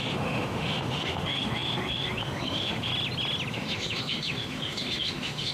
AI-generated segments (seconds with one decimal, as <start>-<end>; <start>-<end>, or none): 0.0-2.9; 3.5-5.5